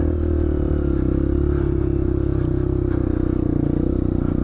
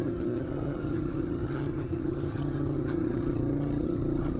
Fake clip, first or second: second